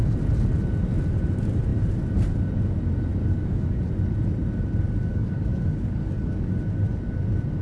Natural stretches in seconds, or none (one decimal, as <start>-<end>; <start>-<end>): 0.0-3.2; 3.8-5.1; 6.5-7.6